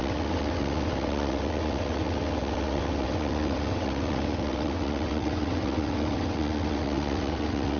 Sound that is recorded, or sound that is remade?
remade